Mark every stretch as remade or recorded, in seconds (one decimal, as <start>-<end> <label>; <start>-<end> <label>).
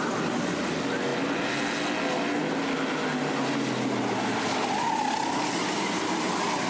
0.0-6.7 recorded